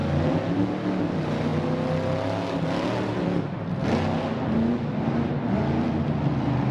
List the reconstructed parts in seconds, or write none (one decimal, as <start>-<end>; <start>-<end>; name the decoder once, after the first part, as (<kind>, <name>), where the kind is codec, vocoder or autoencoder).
none